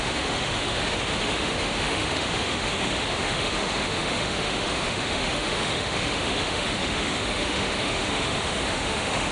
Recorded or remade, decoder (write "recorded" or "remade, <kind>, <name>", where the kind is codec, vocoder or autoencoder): remade, autoencoder, DAC-VAE